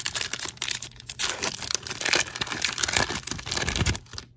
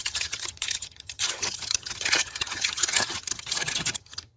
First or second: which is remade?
second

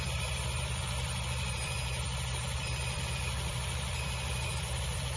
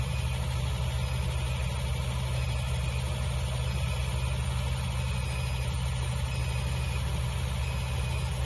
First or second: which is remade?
first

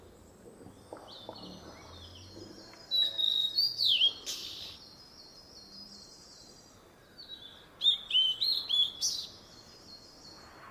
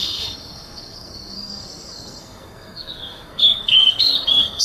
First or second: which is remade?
second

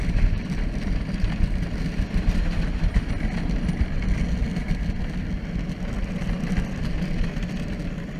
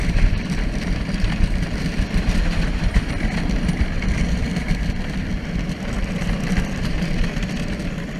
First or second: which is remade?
second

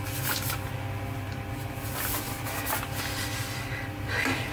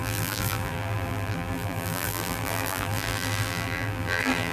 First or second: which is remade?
second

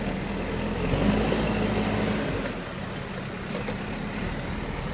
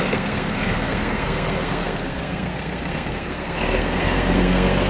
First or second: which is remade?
second